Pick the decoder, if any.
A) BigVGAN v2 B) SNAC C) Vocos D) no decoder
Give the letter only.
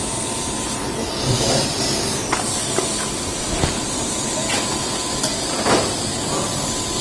D